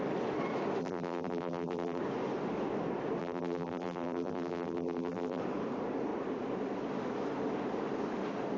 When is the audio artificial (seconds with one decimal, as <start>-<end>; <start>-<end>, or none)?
0.8-2.0; 3.2-5.4